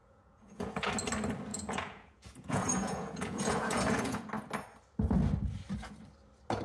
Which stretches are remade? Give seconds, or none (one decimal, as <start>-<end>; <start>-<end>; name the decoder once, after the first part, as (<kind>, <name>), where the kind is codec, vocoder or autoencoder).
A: 0.0-0.9 (vocoder, Vocos); 1.5-4.3